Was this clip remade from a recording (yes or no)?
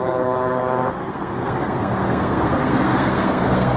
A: yes